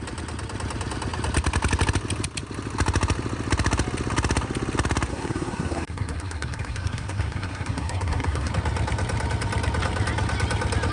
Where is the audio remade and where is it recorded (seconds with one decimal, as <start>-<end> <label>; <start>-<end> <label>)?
0.0-5.1 recorded; 5.1-8.5 remade; 8.5-10.9 recorded